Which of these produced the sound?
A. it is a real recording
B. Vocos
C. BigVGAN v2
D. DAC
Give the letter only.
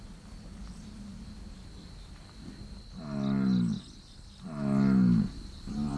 A